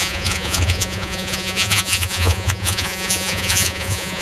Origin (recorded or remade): remade